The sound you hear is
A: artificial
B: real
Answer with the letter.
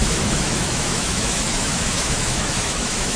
A